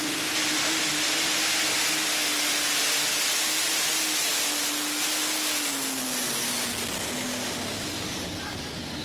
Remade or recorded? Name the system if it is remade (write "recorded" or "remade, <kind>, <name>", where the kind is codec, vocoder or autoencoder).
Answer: recorded